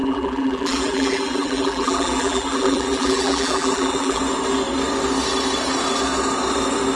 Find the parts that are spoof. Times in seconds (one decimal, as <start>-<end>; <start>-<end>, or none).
0.0-4.2